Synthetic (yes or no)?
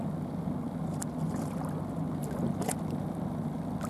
no